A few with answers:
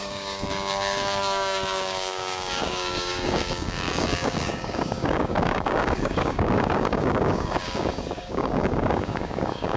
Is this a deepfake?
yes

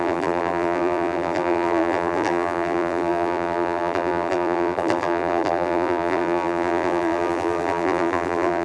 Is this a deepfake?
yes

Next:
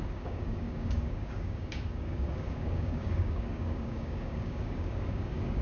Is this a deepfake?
yes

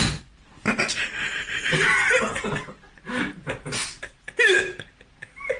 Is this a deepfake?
no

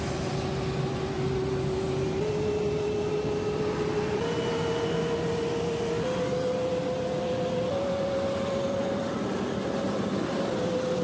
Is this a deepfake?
no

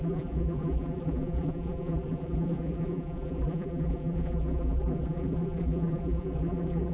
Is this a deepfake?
yes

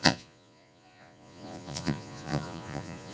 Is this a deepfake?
yes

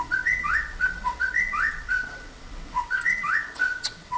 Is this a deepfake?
yes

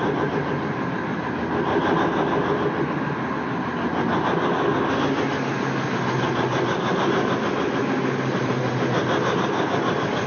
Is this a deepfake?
no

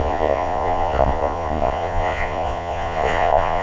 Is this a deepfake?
yes